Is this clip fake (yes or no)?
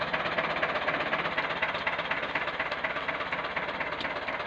no